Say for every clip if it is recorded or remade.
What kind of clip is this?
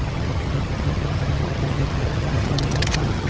remade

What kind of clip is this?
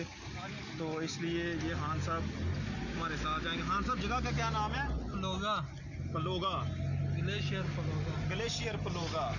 recorded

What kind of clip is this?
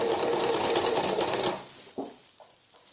recorded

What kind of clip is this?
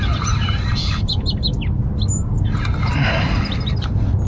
recorded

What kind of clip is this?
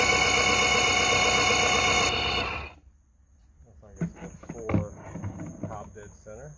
recorded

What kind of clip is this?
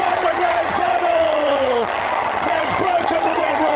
remade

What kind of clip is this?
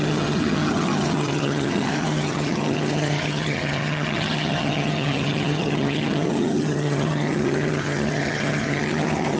remade